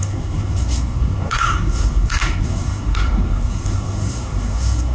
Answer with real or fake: fake